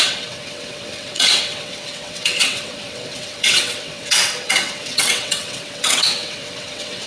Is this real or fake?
fake